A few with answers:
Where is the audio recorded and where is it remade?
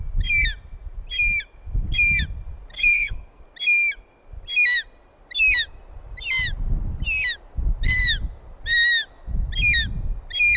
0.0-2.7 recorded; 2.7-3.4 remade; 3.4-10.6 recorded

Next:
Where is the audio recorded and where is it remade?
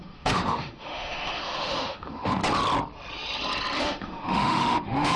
0.0-2.4 remade; 2.4-3.8 recorded; 3.8-5.2 remade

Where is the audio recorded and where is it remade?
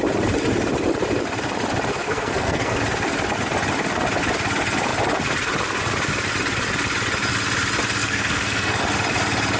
0.0-1.9 recorded; 1.9-2.8 remade; 2.8-8.0 recorded; 8.0-8.8 remade; 8.8-9.6 recorded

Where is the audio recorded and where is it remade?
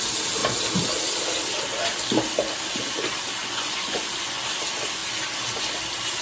0.0-3.4 recorded; 3.4-4.4 remade; 4.4-6.2 recorded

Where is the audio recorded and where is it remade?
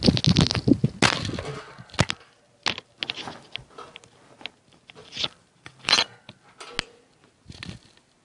0.0-5.0 recorded; 5.0-6.2 remade; 6.2-8.2 recorded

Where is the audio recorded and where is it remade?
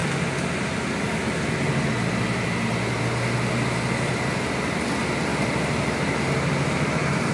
0.0-7.3 recorded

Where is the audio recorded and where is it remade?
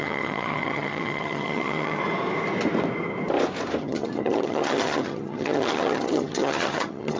0.0-2.0 remade; 2.0-3.8 recorded; 3.8-7.2 remade